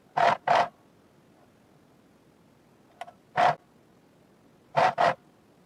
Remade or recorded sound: recorded